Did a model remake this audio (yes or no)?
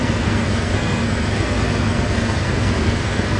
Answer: yes